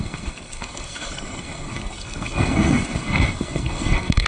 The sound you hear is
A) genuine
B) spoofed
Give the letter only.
B